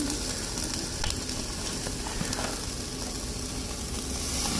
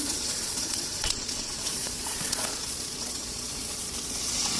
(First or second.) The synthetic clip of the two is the second